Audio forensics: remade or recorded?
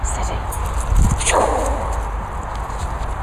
recorded